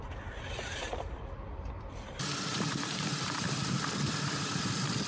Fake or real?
fake